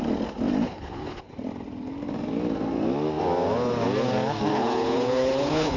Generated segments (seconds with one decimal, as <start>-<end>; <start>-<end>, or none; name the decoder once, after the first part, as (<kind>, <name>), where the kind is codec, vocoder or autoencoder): 0.6-1.3 (codec, HILCodec); 4.5-5.8